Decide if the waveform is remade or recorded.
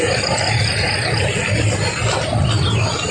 recorded